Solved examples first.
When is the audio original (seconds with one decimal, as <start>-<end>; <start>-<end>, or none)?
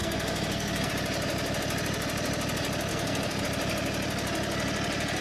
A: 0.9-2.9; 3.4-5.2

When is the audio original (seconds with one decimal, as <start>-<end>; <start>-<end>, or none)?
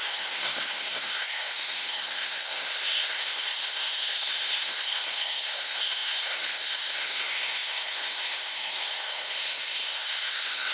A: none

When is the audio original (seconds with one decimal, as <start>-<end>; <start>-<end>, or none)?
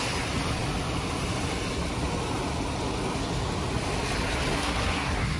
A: 0.0-4.5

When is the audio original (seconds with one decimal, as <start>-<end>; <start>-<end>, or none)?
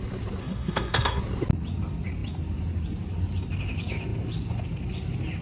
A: 0.0-0.4; 1.2-5.4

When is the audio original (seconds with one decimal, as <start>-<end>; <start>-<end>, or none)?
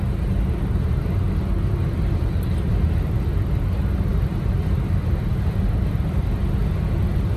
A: 0.0-7.4